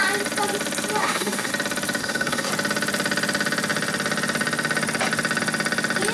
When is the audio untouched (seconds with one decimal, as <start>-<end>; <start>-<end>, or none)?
0.0-1.0; 1.5-2.0; 2.5-6.1